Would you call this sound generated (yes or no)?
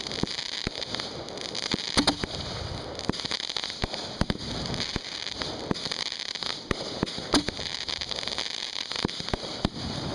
no